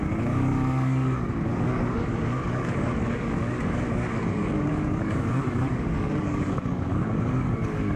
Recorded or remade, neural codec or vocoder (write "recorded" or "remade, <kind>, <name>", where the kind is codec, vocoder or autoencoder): remade, codec, DAC